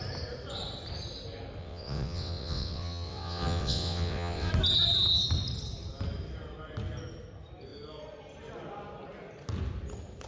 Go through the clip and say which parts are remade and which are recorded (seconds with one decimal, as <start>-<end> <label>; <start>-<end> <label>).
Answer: 0.0-1.6 recorded; 1.6-4.5 remade; 4.5-10.3 recorded